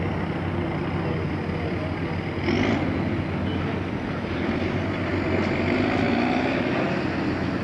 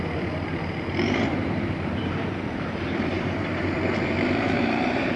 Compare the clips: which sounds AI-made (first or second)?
second